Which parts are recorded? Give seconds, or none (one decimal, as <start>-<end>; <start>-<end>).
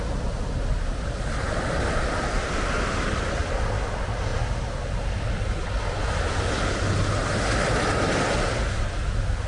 0.0-9.5